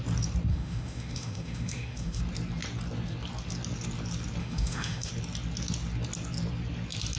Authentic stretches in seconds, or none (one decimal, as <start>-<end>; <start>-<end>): 0.0-0.5; 2.2-4.4; 5.1-7.2